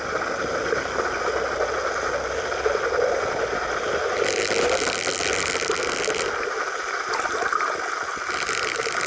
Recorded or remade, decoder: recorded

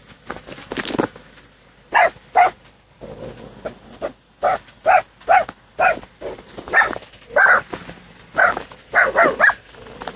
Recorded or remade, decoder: recorded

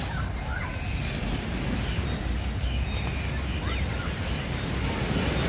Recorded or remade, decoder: recorded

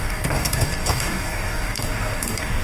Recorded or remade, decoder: remade, codec, DAC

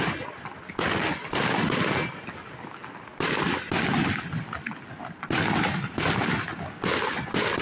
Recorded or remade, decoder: recorded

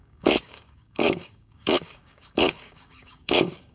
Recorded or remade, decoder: remade, codec, DAC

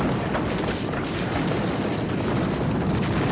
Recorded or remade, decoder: recorded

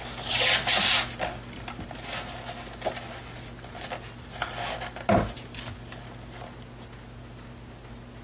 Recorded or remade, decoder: recorded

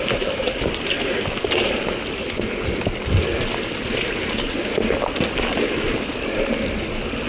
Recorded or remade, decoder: recorded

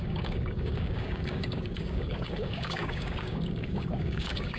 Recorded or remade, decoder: remade, codec, DAC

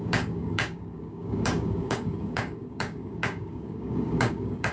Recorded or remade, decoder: remade, codec, DAC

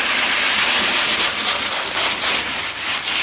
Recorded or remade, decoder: recorded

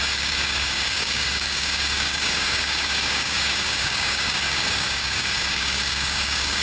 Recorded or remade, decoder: remade, codec, DAC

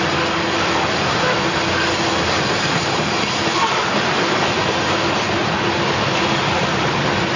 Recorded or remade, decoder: recorded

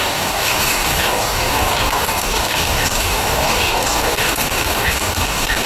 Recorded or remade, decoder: remade, codec, DAC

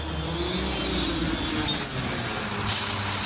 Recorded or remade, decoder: recorded